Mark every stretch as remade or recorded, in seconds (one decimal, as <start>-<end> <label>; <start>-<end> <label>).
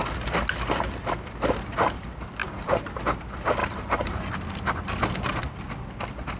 0.0-2.4 recorded; 2.4-3.0 remade; 3.0-3.6 recorded; 3.6-4.3 remade; 4.3-6.4 recorded